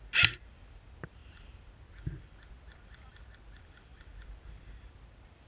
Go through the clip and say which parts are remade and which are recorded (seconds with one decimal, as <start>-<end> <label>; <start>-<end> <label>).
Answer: 0.0-5.5 recorded